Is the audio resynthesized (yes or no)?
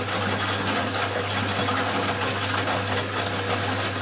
no